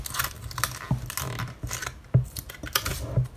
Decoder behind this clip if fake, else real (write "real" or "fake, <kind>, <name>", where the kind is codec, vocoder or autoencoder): real